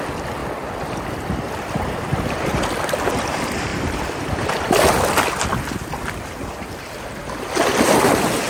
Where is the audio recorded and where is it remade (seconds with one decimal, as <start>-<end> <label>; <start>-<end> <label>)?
0.0-0.4 recorded; 0.4-2.9 remade; 2.9-3.7 recorded; 3.7-4.5 remade; 4.5-8.5 recorded